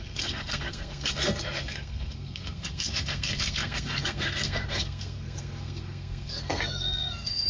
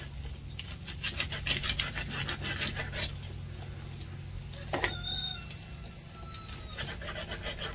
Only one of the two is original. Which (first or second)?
second